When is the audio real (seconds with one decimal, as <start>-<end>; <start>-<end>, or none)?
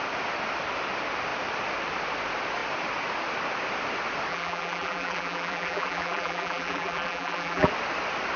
0.0-4.3; 7.7-8.4